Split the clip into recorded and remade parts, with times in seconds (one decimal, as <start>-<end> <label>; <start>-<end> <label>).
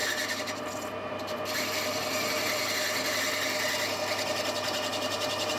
0.0-5.6 recorded